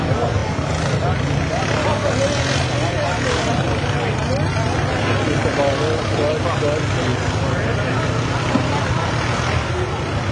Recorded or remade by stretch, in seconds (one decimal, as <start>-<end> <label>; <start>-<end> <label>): 0.0-10.3 recorded